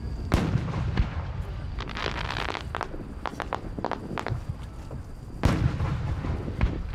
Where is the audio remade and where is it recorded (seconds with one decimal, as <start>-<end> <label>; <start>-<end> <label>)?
0.0-6.9 recorded